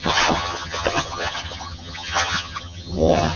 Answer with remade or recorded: remade